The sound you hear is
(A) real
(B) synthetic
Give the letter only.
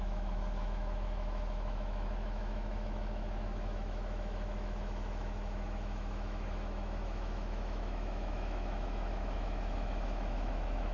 B